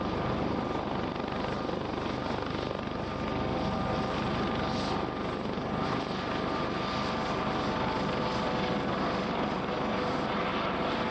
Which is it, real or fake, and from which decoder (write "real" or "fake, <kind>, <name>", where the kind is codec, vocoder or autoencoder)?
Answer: real